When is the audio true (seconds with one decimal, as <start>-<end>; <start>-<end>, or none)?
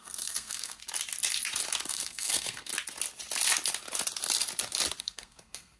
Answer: 0.8-1.9; 2.7-5.0